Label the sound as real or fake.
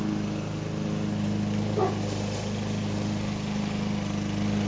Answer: real